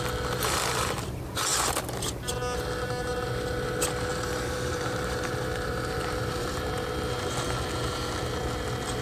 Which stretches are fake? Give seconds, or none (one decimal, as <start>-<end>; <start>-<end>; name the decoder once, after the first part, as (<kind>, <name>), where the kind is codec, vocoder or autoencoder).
4.1-6.7 (vocoder, BigVGAN v2)